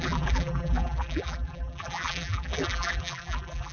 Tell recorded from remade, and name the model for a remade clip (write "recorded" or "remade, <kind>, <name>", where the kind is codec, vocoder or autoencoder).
remade, vocoder, BigVGAN v2